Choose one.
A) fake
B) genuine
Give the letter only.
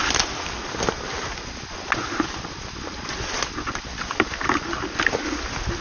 B